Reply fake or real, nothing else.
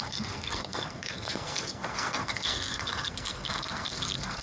fake